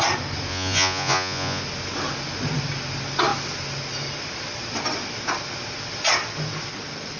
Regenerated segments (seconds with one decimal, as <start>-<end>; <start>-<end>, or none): 0.5-1.6